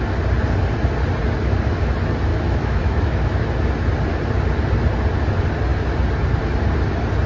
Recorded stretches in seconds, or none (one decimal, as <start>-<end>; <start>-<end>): 0.0-2.3; 3.5-7.3